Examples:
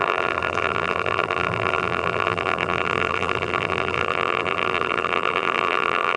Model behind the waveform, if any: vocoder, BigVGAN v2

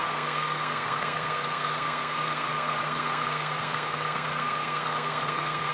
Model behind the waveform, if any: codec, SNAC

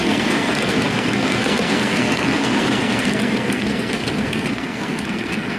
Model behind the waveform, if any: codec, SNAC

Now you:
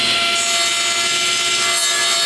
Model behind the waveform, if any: none